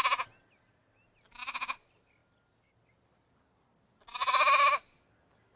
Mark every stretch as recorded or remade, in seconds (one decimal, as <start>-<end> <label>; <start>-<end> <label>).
0.0-5.6 recorded